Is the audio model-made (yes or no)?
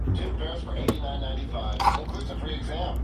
no